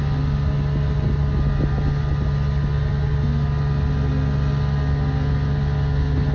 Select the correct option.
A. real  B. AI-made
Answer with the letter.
A